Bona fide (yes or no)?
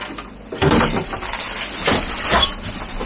no